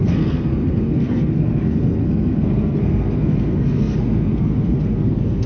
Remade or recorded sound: remade